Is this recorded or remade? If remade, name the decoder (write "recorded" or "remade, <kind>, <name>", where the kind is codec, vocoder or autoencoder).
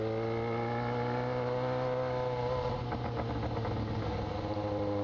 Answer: recorded